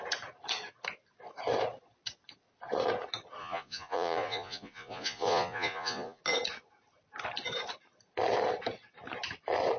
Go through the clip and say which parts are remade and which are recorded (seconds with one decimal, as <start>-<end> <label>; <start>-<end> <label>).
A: 0.0-3.4 recorded; 3.4-6.2 remade; 6.2-9.8 recorded